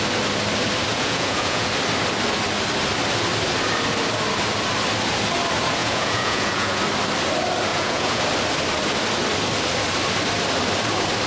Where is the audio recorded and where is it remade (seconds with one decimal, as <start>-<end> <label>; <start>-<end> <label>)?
0.0-0.9 recorded; 0.9-1.7 remade; 1.7-5.8 recorded; 5.8-6.8 remade; 6.8-7.7 recorded; 7.7-8.2 remade; 8.2-11.3 recorded